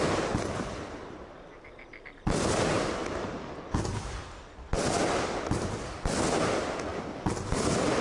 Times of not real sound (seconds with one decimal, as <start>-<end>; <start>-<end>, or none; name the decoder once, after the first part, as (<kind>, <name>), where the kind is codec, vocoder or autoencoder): none